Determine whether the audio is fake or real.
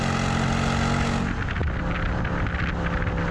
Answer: real